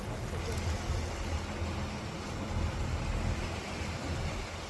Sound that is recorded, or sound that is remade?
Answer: recorded